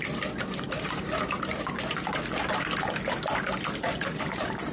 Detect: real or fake real